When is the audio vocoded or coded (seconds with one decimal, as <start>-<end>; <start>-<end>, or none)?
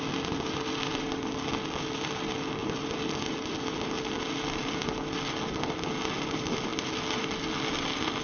none